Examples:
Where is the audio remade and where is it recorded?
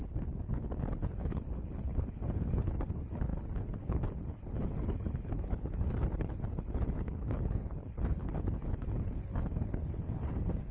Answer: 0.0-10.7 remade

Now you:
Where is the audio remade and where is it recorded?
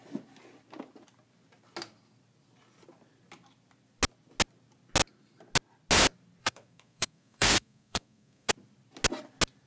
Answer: 0.0-6.4 recorded; 6.4-8.5 remade; 8.5-9.7 recorded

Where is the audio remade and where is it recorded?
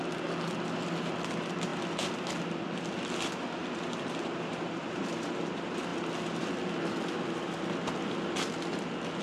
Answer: 0.0-3.6 recorded; 3.6-4.6 remade; 4.6-9.2 recorded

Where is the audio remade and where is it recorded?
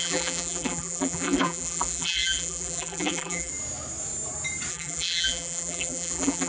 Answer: 0.0-3.5 remade; 3.5-4.7 recorded; 4.7-6.5 remade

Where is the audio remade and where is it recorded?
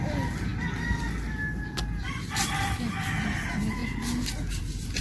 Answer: 0.0-0.5 remade; 0.5-1.8 recorded; 1.8-3.8 remade; 3.8-4.5 recorded; 4.5-5.0 remade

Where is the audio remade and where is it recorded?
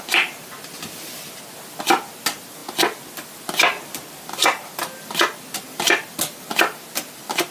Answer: 0.0-7.5 recorded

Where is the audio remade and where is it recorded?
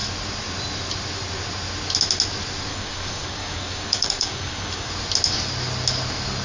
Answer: 0.0-2.7 recorded; 2.7-4.9 remade; 4.9-6.4 recorded